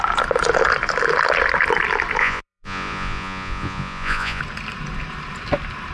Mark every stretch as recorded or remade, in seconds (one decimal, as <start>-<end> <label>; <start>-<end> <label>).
0.0-2.2 recorded; 2.2-4.4 remade; 4.4-5.9 recorded